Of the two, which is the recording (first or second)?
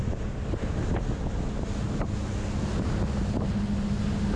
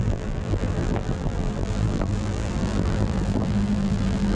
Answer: first